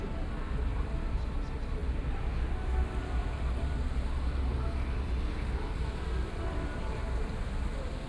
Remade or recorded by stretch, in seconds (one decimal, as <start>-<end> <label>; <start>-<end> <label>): 0.0-0.7 recorded; 0.7-1.2 remade; 1.2-8.1 recorded